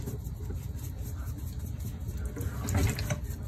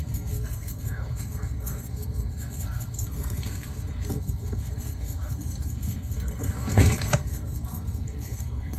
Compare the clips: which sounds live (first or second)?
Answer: first